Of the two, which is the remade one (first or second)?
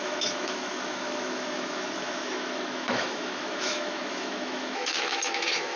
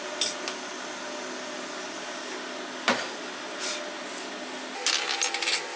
first